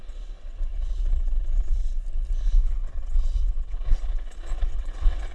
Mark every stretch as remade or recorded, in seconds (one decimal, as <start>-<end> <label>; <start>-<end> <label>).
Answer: 0.0-2.0 remade; 2.0-2.6 recorded; 2.6-5.3 remade